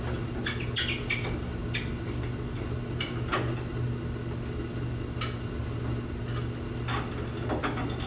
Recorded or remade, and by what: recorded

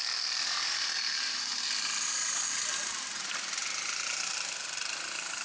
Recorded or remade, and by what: recorded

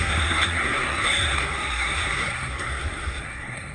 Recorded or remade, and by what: remade, codec, SNAC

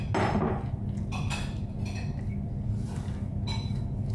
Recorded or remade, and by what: recorded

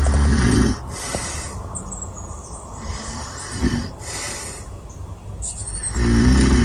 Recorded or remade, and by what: recorded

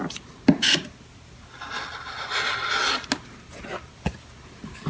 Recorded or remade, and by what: recorded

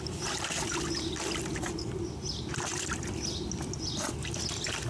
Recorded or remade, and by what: recorded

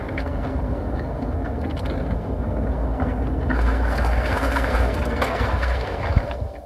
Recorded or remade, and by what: remade, codec, SNAC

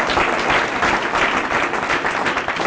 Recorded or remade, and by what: recorded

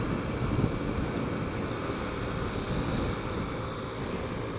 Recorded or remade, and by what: recorded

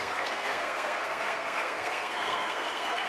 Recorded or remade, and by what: remade, codec, SNAC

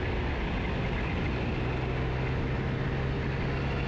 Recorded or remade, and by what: recorded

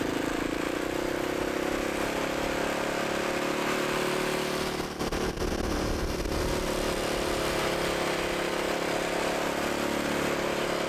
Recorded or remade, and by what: recorded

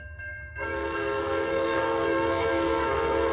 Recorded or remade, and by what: remade, codec, SNAC